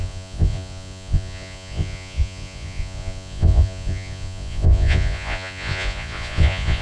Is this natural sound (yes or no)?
no